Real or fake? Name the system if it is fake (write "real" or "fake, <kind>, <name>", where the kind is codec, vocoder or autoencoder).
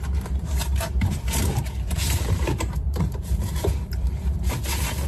fake, vocoder, BigVGAN v2